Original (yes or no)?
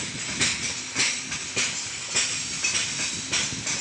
yes